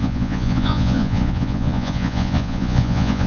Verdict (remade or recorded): remade